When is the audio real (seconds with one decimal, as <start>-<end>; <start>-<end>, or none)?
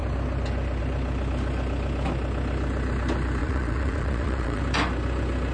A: 0.0-3.4; 4.6-5.5